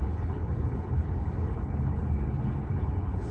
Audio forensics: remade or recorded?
remade